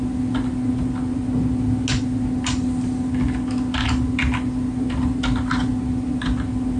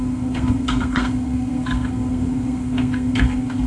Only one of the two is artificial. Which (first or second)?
second